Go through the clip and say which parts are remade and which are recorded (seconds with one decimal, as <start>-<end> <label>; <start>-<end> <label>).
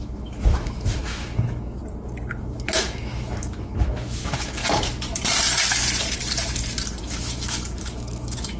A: 0.0-1.8 remade; 1.8-2.4 recorded; 2.4-4.6 remade; 4.6-7.0 recorded; 7.0-8.6 remade